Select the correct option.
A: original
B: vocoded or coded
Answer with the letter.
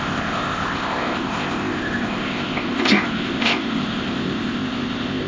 B